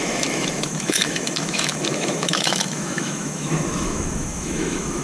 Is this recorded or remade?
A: remade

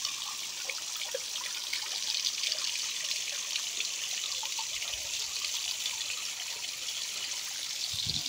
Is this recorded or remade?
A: recorded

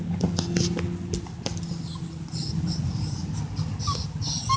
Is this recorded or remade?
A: recorded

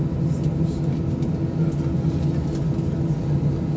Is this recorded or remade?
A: recorded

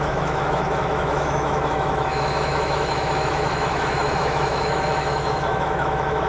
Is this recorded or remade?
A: remade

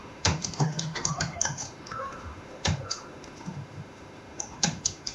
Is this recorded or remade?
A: remade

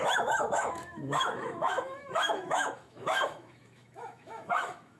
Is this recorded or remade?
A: remade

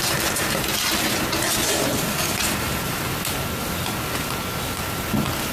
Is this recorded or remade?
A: recorded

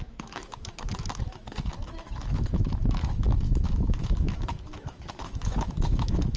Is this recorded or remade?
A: remade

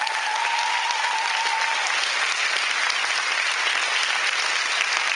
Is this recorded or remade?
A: recorded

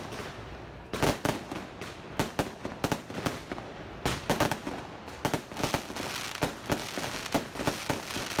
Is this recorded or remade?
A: recorded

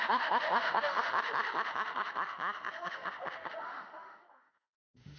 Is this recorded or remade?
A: remade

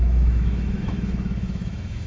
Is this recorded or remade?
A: remade